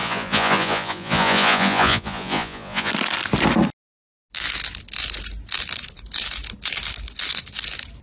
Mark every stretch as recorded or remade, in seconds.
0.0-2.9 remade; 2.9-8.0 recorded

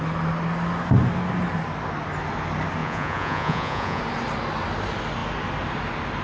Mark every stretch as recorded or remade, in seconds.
0.0-2.8 recorded; 2.8-4.0 remade; 4.0-6.2 recorded

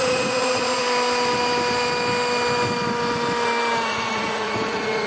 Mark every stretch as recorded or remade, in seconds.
0.0-0.8 remade; 0.8-3.9 recorded; 3.9-5.1 remade

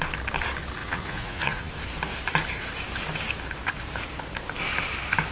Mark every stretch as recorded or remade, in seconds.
0.0-0.8 recorded; 0.8-1.7 remade; 1.7-5.3 recorded

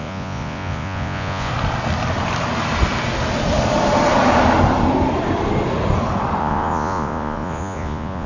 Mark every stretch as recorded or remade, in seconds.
0.0-1.5 remade; 1.5-6.4 recorded; 6.4-8.3 remade

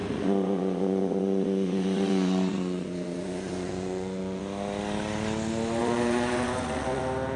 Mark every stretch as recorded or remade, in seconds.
0.0-4.4 remade; 4.4-5.8 recorded; 5.8-7.0 remade; 7.0-7.4 recorded